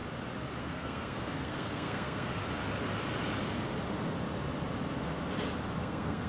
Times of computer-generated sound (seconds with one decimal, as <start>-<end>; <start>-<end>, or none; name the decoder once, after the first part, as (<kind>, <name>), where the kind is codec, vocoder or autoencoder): 0.6-2.3 (codec, SNAC); 5.8-6.3